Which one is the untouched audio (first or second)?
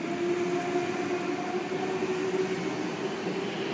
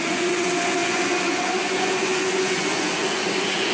first